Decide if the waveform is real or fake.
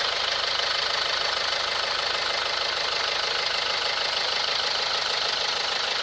real